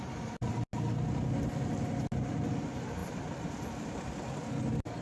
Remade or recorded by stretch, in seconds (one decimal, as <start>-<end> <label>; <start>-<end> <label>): 0.0-3.0 recorded; 3.0-4.5 remade; 4.5-5.0 recorded